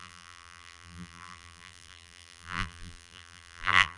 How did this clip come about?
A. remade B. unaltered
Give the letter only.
A